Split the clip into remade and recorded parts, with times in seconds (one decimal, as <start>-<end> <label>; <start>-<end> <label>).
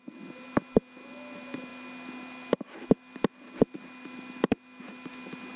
0.0-5.6 recorded